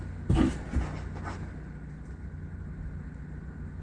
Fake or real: real